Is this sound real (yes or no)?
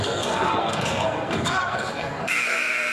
no